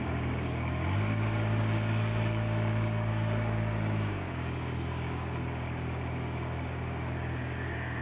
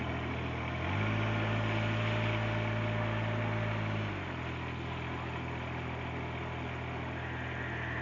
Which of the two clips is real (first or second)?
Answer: second